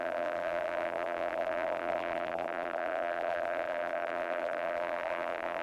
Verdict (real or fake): fake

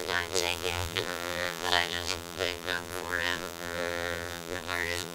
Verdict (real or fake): fake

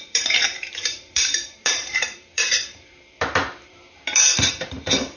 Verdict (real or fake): fake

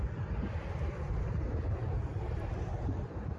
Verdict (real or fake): fake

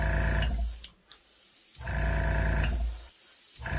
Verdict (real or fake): real